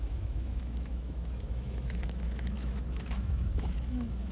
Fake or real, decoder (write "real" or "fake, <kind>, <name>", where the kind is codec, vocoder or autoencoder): fake, autoencoder, DAC-VAE